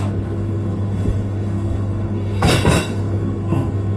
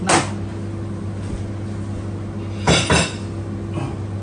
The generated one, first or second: first